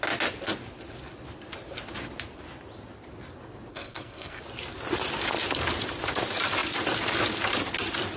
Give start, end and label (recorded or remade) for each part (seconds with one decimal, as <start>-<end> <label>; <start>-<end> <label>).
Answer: 0.0-3.7 recorded; 3.7-4.4 remade; 4.4-8.2 recorded